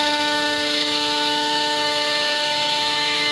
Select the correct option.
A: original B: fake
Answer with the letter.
B